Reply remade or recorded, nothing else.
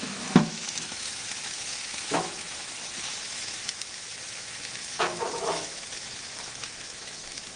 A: remade